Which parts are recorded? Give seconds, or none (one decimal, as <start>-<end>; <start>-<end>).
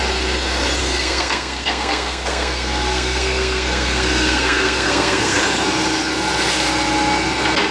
0.0-0.8; 5.4-7.7